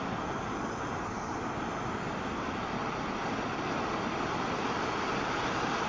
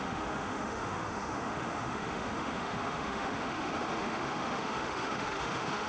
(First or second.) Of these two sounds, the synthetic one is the second